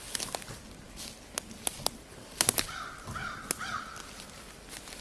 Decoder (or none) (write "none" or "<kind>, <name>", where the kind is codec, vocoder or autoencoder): none